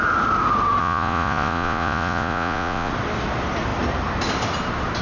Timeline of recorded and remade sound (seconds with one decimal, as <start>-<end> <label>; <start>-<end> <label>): 0.0-0.8 recorded; 0.8-2.9 remade; 2.9-5.0 recorded